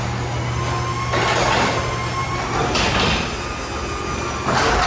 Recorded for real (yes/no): yes